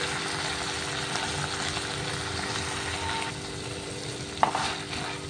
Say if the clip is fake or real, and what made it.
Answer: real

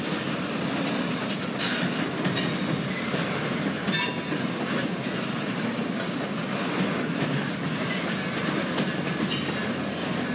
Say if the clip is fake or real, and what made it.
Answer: real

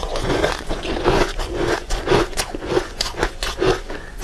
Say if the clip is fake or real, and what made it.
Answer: fake, vocoder, Vocos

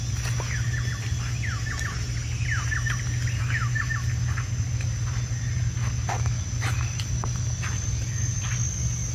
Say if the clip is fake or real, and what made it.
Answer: real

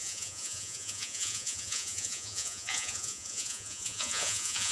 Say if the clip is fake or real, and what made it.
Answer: fake, vocoder, Vocos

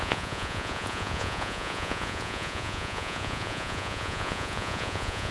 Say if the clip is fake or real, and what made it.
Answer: fake, vocoder, Vocos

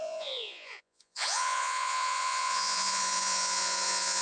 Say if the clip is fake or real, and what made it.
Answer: fake, vocoder, Vocos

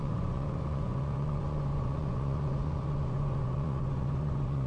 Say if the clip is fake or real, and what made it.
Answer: fake, vocoder, Vocos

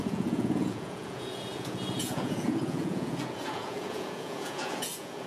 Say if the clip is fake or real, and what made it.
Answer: fake, vocoder, Vocos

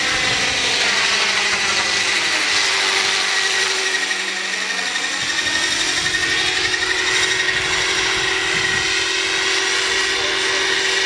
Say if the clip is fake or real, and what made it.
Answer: real